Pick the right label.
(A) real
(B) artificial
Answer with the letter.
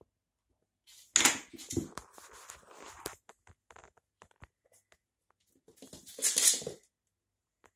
A